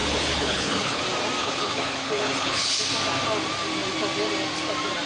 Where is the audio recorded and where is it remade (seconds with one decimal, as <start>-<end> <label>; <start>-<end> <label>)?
0.0-1.0 remade; 1.0-1.4 recorded; 1.4-2.8 remade; 2.8-5.1 recorded